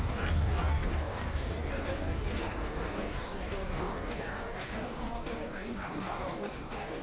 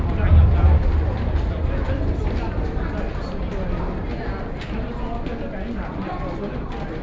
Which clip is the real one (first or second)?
second